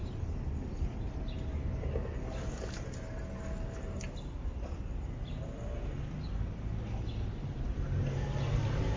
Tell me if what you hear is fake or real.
real